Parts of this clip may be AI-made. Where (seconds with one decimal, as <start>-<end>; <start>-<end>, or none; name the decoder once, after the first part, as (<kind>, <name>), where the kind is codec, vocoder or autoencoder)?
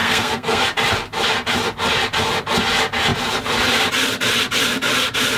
0.0-0.6 (codec, SNAC)